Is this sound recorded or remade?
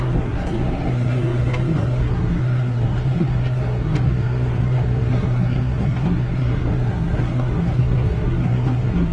remade